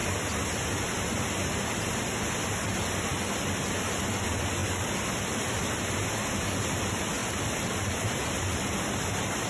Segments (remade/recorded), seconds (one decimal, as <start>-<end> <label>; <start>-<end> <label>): 0.0-4.6 recorded; 4.6-6.4 remade; 6.4-7.2 recorded; 7.2-9.5 remade